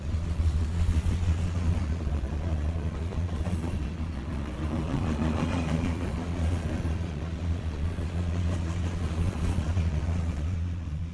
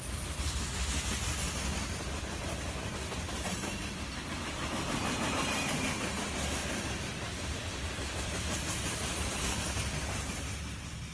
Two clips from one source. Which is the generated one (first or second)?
first